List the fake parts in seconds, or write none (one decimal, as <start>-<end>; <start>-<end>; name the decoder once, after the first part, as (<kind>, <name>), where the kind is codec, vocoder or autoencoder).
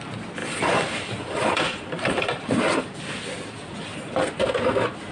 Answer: 0.4-3.0 (vocoder, BigVGAN v2)